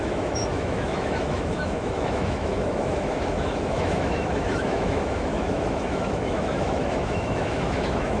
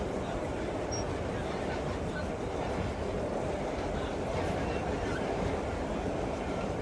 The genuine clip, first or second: second